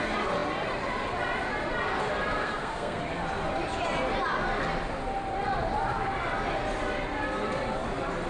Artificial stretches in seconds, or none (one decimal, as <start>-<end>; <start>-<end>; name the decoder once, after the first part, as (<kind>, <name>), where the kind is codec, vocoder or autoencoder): 2.4-3.0 (codec, SNAC)

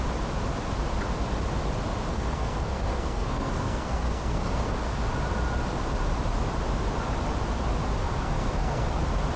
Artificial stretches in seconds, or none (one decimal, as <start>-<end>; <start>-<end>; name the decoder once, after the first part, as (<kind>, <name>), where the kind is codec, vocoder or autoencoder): 2.1-5.0 (codec, SNAC); 8.0-9.0

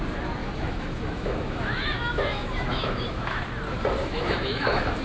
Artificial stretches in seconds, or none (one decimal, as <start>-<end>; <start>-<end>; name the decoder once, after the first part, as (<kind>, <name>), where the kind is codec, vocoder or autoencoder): 0.4-3.4 (autoencoder, DAC-VAE); 4.0-5.0

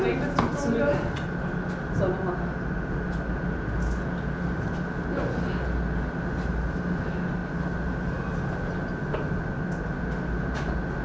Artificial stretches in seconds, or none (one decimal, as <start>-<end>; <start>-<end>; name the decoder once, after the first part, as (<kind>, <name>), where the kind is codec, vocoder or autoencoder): none

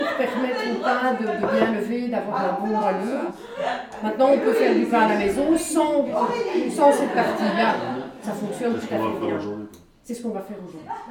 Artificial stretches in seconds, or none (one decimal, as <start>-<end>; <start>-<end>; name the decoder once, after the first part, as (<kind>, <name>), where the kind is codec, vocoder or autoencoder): 2.8-3.3 (vocoder, Vocos)

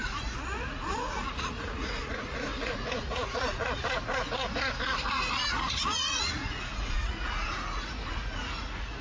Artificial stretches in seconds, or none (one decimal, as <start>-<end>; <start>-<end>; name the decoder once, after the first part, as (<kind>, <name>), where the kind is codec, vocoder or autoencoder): 0.0-9.0 (vocoder, Vocos)

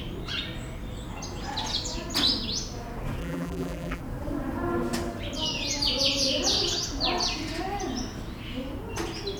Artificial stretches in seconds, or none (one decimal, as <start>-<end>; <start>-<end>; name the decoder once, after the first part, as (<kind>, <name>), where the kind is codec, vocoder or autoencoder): 3.2-4.0 (vocoder, BigVGAN v2)

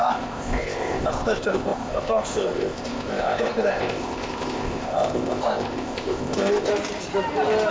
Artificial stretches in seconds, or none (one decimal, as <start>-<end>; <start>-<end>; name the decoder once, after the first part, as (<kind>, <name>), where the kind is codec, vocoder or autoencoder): 0.0-6.7 (codec, ZipCodec)